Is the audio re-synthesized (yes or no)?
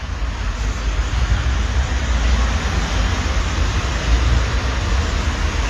no